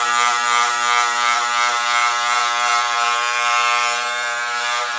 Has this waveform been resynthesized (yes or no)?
yes